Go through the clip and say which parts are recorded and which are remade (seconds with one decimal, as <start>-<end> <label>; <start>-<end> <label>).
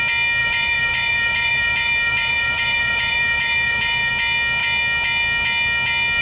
0.0-0.4 recorded; 0.4-4.1 remade; 4.1-6.2 recorded